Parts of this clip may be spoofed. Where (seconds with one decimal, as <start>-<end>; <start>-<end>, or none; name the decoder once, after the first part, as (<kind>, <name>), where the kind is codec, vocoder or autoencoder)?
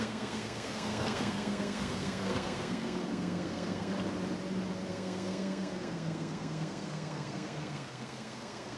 0.0-3.9 (codec, SNAC); 4.9-8.8